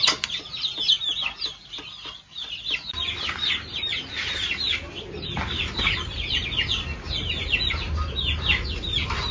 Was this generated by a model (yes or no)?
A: no